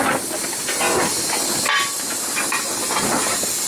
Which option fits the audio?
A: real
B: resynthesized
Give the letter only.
A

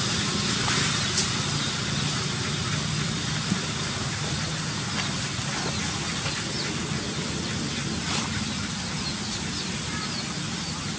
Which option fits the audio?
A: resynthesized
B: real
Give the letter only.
B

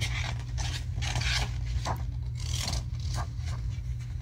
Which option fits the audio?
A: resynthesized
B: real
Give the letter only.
B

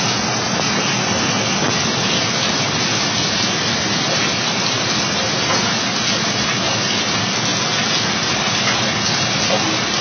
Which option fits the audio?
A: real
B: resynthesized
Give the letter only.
A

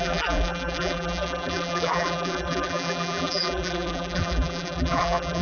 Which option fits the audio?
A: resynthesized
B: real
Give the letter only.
A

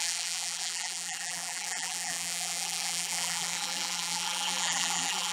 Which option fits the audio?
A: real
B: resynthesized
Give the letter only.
B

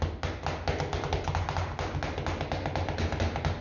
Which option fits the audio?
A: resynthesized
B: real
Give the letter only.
B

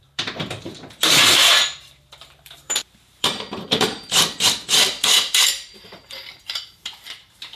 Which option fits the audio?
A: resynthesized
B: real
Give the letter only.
A